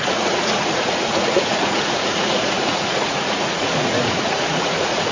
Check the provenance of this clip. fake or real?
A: fake